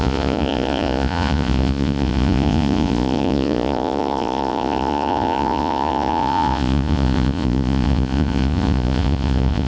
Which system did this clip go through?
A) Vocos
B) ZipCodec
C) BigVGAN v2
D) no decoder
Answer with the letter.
A